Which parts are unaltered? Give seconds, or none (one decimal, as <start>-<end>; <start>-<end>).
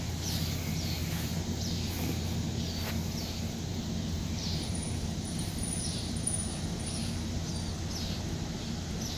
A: 0.0-1.0; 1.9-3.7; 7.5-9.2